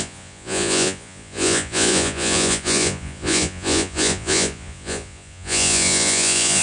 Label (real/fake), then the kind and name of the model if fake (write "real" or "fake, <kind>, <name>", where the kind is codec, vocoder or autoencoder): fake, vocoder, Vocos